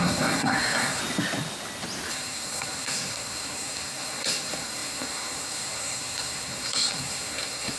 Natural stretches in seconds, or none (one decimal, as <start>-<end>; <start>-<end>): 1.0-2.1